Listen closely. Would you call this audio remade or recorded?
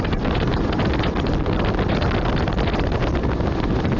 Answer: recorded